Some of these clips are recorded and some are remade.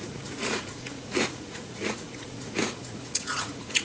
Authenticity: remade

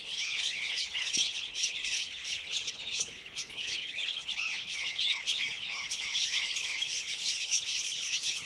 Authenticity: remade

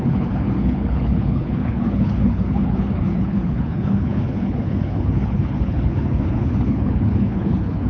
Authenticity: remade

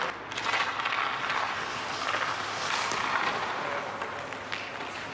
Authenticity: recorded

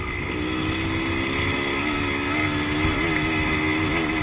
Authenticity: recorded